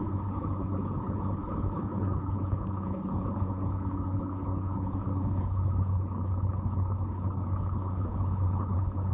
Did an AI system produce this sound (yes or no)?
yes